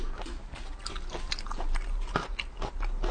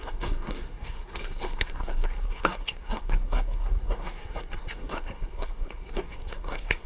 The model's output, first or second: second